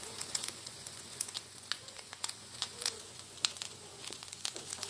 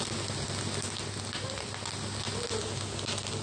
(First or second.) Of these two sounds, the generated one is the first